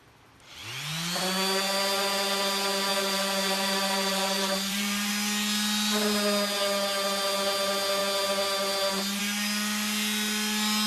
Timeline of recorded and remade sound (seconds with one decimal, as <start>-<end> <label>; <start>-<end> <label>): 0.0-2.9 recorded; 2.9-5.1 remade; 5.1-10.9 recorded